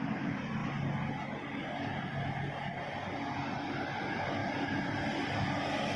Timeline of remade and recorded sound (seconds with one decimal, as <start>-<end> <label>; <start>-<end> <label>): 0.0-6.0 recorded